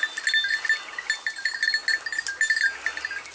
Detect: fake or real real